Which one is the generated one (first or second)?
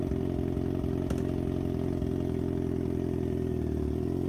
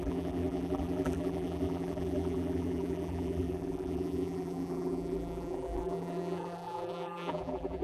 second